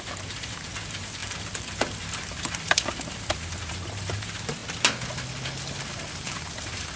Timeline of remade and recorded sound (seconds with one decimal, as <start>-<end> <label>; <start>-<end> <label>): 0.0-4.6 remade; 4.6-5.9 recorded; 5.9-7.0 remade